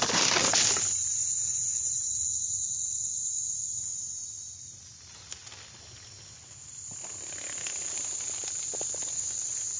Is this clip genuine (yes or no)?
yes